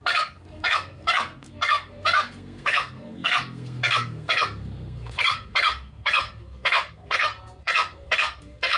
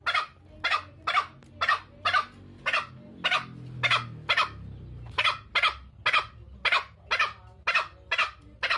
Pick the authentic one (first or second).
second